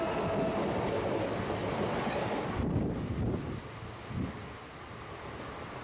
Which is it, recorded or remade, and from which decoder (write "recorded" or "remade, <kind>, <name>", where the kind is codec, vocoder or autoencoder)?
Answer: recorded